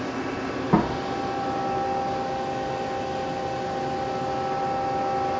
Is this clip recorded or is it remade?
recorded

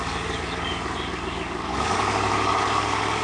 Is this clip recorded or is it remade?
remade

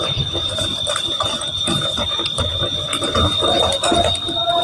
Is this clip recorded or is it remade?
recorded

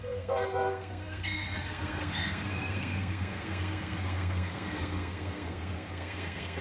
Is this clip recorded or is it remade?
remade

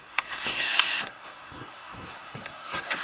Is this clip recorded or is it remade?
remade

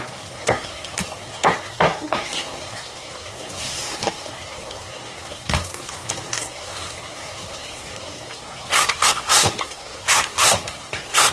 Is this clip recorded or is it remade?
remade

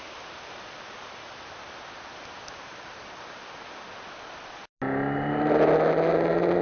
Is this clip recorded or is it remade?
recorded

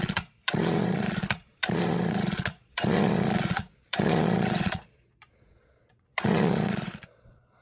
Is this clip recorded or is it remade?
remade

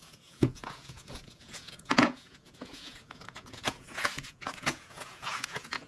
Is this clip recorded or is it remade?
remade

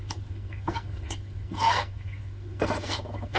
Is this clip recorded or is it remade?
remade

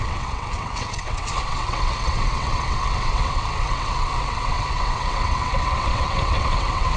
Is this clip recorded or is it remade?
remade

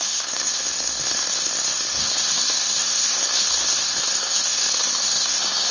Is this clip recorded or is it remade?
remade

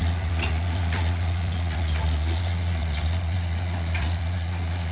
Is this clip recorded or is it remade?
remade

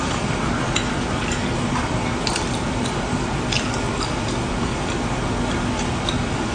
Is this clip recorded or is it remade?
remade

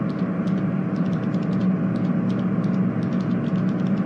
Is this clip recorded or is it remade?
recorded